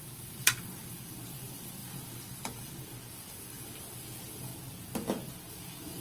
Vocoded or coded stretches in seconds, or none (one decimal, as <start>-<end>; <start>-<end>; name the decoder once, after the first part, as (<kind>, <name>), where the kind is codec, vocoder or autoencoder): 0.0-4.5 (vocoder, BigVGAN v2); 5.5-6.0